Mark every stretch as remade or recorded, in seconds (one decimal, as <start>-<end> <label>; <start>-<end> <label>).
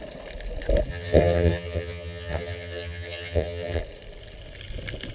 0.0-0.9 recorded; 0.9-3.8 remade; 3.8-5.1 recorded